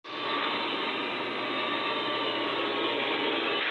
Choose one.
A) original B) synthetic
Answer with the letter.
A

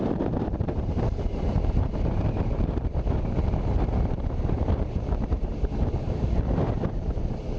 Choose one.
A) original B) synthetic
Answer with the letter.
B